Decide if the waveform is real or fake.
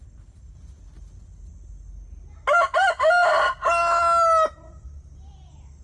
real